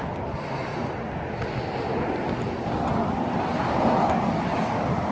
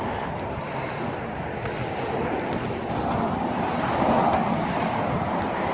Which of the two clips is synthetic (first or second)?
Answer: second